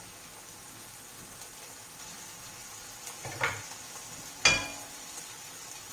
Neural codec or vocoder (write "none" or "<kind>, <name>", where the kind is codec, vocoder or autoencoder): none